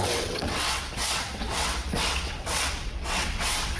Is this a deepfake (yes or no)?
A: yes